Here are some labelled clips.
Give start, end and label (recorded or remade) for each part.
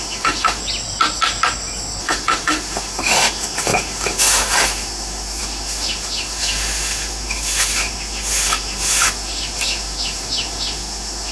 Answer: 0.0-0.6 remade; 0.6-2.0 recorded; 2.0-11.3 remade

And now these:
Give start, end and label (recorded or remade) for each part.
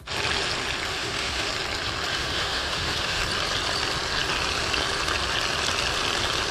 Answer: 0.0-0.9 recorded; 0.9-1.5 remade; 1.5-2.1 recorded; 2.1-3.2 remade; 3.2-6.5 recorded